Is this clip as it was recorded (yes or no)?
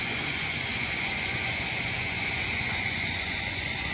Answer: no